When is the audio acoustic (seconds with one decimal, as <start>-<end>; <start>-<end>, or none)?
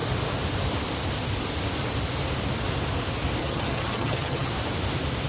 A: 0.0-3.4; 4.5-5.3